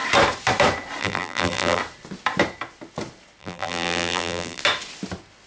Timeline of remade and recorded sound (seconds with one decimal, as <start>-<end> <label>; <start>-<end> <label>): 0.0-1.0 recorded; 1.0-1.8 remade; 1.8-3.4 recorded; 3.4-4.6 remade; 4.6-5.5 recorded